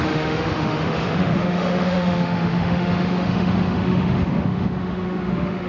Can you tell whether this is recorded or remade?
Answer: remade